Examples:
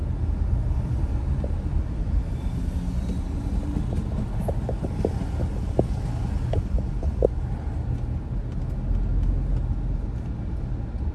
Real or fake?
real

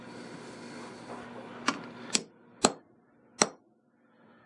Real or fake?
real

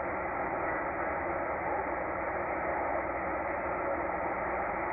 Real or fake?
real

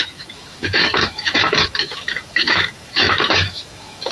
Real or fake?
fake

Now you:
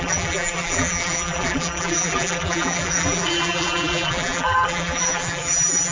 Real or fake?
fake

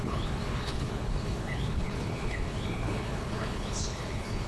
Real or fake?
fake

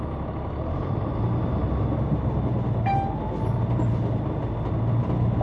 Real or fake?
real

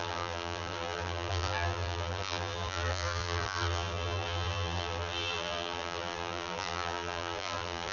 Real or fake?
fake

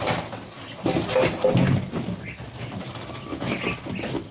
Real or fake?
real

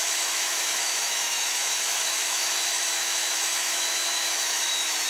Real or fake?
fake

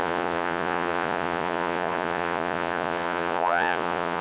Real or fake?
fake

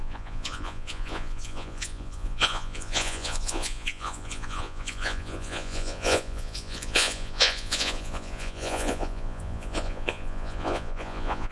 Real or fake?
fake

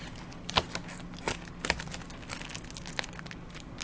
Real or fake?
real